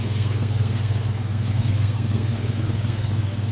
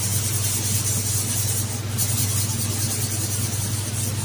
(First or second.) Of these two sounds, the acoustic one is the second